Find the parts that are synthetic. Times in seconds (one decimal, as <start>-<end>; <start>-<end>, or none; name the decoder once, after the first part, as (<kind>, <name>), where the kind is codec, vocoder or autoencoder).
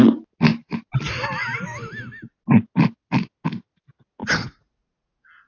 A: 4.2-5.5 (vocoder, Vocos)